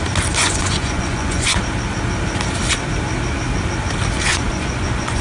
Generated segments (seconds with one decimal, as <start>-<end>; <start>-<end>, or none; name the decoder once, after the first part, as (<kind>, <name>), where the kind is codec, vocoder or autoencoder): 0.4-1.6 (vocoder, Vocos); 4.3-5.2